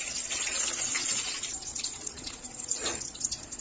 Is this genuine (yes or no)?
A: no